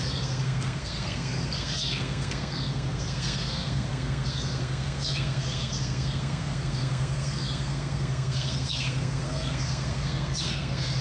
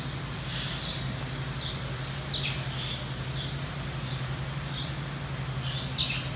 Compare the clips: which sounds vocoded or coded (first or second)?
first